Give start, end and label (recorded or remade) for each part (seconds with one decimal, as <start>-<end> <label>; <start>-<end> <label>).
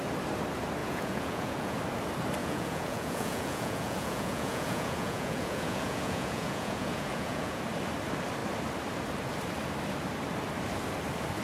0.0-0.8 recorded; 0.8-1.8 remade; 1.8-2.4 recorded; 2.4-7.6 remade; 7.6-11.4 recorded